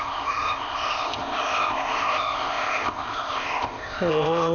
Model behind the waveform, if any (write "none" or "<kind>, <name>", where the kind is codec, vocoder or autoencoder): codec, ZipCodec